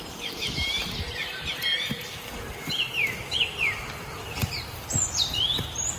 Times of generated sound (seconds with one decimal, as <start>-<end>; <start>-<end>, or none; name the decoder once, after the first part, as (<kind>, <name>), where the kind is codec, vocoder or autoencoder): 0.0-6.0 (vocoder, BigVGAN v2)